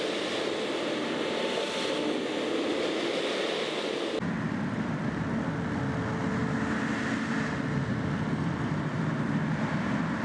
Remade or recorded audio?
recorded